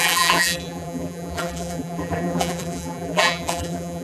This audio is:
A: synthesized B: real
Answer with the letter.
A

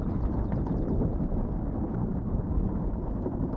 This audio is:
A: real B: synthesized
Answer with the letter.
A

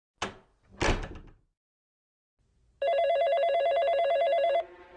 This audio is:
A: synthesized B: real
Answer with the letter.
B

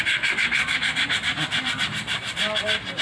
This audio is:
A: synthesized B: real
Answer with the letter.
A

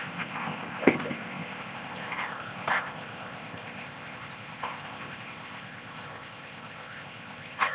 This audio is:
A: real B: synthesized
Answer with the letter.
B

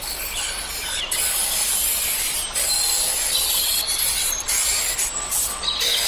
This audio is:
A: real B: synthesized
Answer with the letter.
A